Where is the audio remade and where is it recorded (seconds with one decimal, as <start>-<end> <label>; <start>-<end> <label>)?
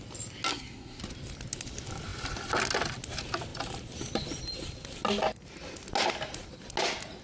0.0-0.5 recorded; 0.5-1.0 remade; 1.0-7.2 recorded